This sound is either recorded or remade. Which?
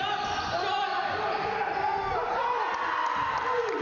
recorded